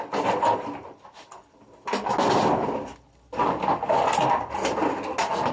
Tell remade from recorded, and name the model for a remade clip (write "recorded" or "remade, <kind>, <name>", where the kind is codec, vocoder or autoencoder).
recorded